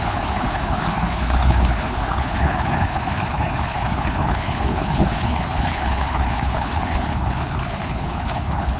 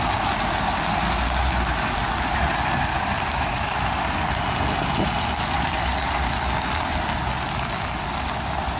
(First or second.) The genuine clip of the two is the second